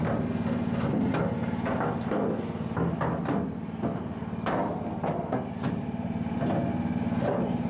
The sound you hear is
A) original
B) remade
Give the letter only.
A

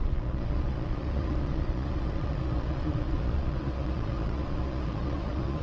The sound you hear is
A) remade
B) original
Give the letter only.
A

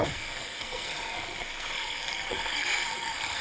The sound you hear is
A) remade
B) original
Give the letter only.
A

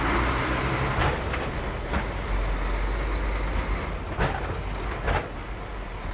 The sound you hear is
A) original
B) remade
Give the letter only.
A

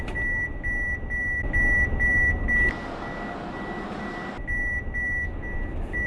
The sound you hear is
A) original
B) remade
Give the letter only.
A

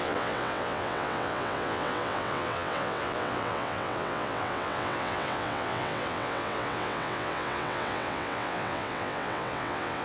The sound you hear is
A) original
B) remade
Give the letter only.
B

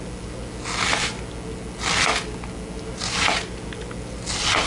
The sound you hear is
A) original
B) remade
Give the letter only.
A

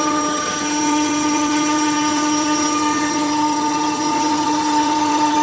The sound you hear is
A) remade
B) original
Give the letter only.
A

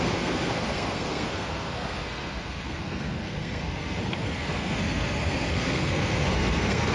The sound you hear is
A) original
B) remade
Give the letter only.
B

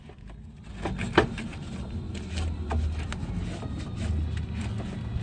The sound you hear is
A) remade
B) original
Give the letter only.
B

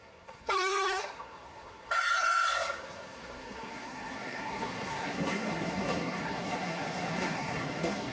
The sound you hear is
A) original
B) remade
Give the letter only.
B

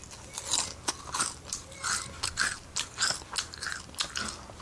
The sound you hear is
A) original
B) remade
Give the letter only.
A